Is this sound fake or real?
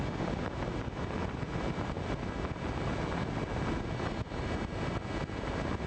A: real